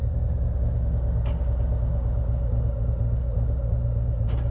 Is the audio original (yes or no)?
yes